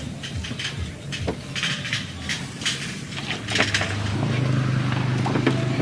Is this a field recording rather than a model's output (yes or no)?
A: yes